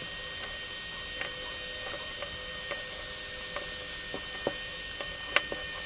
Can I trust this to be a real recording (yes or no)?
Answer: yes